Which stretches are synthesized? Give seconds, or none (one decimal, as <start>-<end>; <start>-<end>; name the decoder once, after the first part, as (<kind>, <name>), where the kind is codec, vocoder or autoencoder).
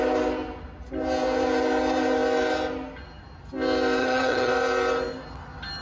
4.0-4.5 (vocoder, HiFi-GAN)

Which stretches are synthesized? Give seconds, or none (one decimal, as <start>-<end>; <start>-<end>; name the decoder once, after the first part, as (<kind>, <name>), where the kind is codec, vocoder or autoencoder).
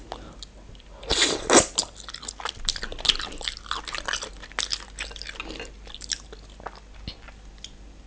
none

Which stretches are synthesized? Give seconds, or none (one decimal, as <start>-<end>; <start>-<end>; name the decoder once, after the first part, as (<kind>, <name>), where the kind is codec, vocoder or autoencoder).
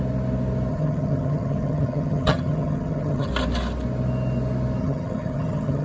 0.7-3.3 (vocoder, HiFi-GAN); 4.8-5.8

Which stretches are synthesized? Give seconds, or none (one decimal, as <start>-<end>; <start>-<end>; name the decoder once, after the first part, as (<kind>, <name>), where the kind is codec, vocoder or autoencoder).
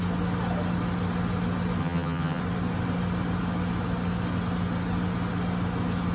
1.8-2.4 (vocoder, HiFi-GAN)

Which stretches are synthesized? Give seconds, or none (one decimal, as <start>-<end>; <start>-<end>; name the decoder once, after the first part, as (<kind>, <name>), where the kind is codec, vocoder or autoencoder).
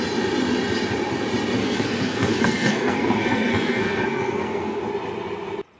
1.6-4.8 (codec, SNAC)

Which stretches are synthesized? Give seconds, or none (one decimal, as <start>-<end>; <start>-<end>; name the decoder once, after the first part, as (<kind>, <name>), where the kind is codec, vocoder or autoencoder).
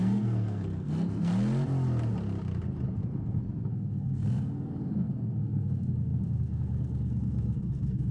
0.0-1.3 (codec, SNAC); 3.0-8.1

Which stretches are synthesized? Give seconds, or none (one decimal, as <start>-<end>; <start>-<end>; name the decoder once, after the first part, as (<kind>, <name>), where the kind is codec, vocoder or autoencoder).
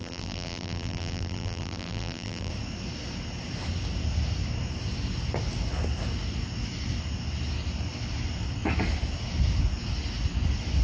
0.0-2.5 (vocoder, BigVGAN v2)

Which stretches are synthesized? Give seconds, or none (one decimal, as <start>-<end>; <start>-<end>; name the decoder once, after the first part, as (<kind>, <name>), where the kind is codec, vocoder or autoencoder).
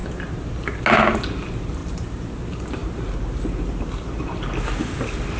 1.8-2.3 (vocoder, BigVGAN v2)